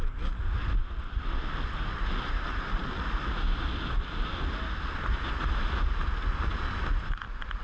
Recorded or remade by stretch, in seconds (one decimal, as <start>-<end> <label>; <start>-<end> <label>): 0.0-7.6 recorded